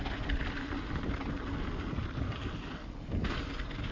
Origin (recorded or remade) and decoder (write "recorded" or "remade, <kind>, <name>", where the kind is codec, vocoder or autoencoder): recorded